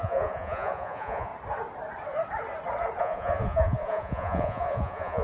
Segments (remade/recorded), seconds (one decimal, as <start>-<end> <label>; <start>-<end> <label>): 0.0-1.3 remade; 1.3-3.0 recorded; 3.0-5.2 remade